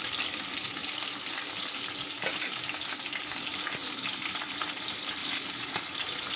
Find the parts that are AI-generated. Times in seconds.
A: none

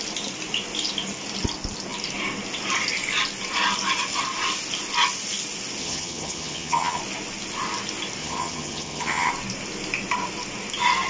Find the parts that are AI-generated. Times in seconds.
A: 5.8-7.0 (vocoder, HiFi-GAN); 8.2-9.3